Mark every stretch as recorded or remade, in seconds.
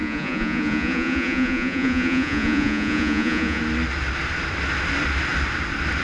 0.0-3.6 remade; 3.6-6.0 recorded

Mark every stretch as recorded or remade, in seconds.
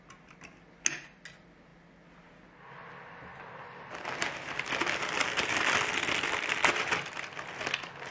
0.0-8.1 recorded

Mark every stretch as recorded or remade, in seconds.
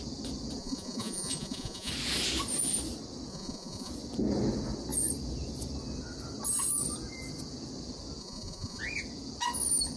0.0-0.6 recorded; 0.6-1.9 remade; 1.9-3.3 recorded; 3.3-3.9 remade; 3.9-8.2 recorded; 8.2-8.8 remade; 8.8-10.0 recorded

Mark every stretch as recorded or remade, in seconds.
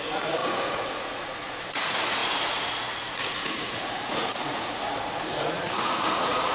0.0-6.5 remade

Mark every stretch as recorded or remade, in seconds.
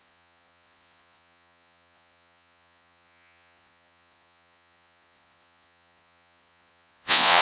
0.0-7.4 remade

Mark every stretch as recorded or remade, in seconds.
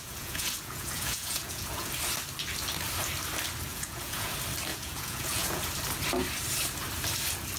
0.0-1.9 remade; 1.9-3.7 recorded; 3.7-4.3 remade; 4.3-4.7 recorded; 4.7-5.6 remade; 5.6-7.6 recorded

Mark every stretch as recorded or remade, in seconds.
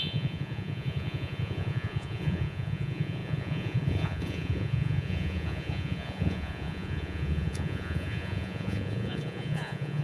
0.0-10.0 remade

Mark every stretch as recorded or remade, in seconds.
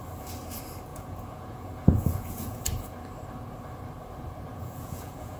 0.0-0.9 recorded; 0.9-2.6 remade; 2.6-4.5 recorded; 4.5-5.4 remade